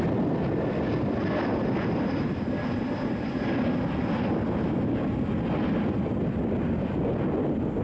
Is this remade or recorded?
recorded